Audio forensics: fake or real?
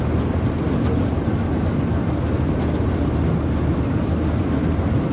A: real